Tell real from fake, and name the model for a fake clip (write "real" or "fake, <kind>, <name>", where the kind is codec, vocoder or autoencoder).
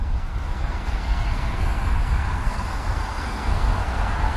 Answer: fake, codec, SNAC